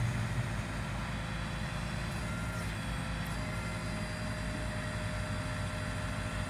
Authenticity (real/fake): real